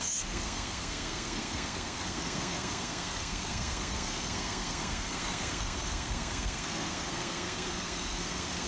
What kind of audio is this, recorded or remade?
remade